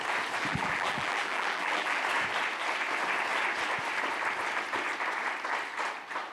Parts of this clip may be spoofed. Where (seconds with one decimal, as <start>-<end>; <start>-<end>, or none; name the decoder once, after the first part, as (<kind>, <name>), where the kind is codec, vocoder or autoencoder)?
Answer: 0.5-2.0 (vocoder, BigVGAN v2)